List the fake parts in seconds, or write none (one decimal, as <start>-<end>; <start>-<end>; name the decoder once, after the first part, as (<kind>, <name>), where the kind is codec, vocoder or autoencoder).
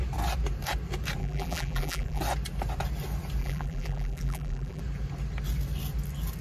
1.2-2.2 (vocoder, BigVGAN v2); 3.4-4.8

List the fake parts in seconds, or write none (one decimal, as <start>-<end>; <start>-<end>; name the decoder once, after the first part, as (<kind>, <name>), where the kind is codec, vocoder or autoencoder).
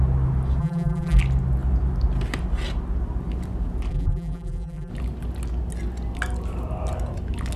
0.6-1.2 (vocoder, BigVGAN v2); 3.9-4.9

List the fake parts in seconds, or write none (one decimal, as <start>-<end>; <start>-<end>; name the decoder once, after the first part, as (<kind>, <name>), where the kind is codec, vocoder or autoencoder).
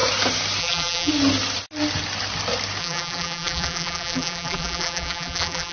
0.6-1.1 (vocoder, BigVGAN v2); 2.8-5.7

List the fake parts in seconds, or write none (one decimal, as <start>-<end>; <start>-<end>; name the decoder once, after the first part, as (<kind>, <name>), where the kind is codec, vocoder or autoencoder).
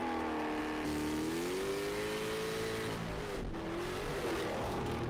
0.0-0.6 (vocoder, BigVGAN v2)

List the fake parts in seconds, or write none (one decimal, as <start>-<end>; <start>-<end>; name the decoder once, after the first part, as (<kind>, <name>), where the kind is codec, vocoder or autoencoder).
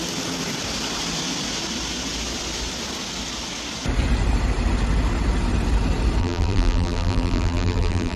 6.2-8.2 (vocoder, BigVGAN v2)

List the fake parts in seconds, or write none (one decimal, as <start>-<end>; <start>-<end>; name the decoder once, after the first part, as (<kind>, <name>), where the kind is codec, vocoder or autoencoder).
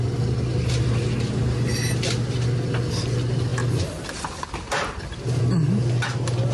0.5-1.0 (vocoder, BigVGAN v2)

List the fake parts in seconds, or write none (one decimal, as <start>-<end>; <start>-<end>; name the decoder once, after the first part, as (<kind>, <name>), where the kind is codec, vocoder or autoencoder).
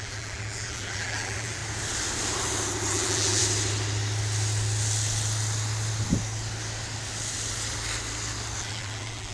0.0-1.6 (vocoder, BigVGAN v2); 2.9-3.4; 8.6-9.3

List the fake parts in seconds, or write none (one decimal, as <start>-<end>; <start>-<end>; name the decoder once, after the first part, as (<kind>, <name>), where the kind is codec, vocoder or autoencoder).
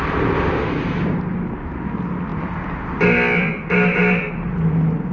none